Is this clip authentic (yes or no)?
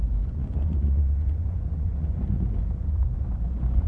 no